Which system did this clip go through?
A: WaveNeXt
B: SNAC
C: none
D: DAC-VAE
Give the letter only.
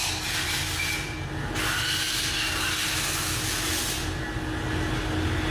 C